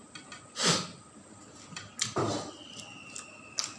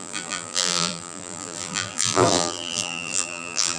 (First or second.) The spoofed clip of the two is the second